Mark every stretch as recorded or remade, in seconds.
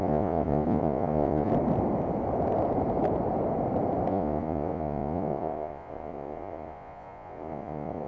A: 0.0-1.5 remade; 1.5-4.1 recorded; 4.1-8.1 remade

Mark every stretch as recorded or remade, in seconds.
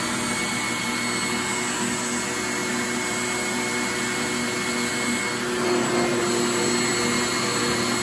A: 0.0-8.0 recorded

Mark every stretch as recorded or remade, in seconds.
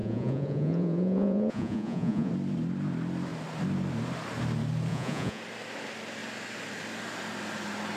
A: 0.0-2.3 remade; 2.3-4.9 recorded; 4.9-5.4 remade; 5.4-8.0 recorded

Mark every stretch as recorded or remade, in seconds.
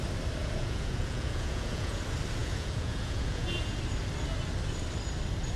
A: 0.0-0.4 recorded; 0.4-2.0 remade; 2.0-2.4 recorded; 2.4-3.8 remade; 3.8-5.6 recorded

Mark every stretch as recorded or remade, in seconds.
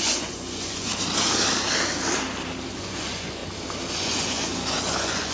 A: 0.0-0.9 remade; 0.9-2.7 recorded; 2.7-3.4 remade; 3.4-3.9 recorded; 3.9-5.3 remade